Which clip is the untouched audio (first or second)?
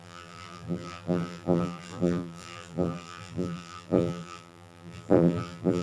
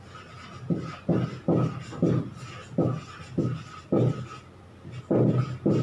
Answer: second